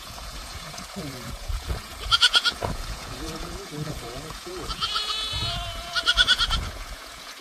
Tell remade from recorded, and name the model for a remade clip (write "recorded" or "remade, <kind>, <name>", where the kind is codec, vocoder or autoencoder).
remade, vocoder, Vocos